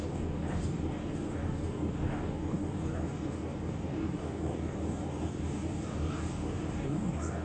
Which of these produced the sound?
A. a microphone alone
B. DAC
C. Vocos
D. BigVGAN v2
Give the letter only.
B